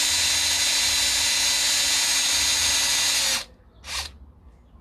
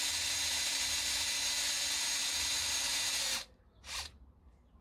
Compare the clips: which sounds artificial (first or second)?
second